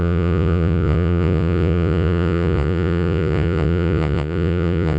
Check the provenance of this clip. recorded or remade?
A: remade